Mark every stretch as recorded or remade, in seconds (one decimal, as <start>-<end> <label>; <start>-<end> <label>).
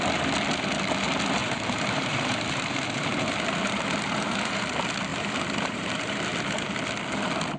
0.0-1.4 recorded; 1.4-4.6 remade; 4.6-5.1 recorded; 5.1-6.3 remade; 6.3-7.6 recorded